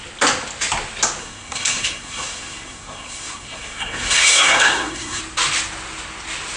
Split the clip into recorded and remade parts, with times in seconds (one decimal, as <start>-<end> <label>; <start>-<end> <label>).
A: 0.0-1.2 recorded; 1.2-5.2 remade; 5.2-6.6 recorded